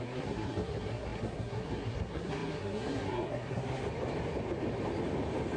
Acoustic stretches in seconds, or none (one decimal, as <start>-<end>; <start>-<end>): 3.8-5.6